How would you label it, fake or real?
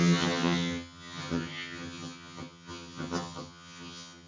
fake